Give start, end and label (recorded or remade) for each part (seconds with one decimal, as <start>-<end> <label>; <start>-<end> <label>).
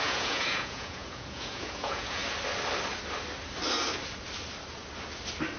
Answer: 0.0-2.2 remade; 2.2-5.6 recorded